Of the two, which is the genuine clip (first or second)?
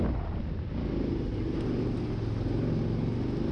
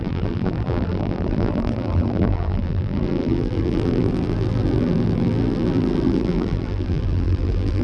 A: first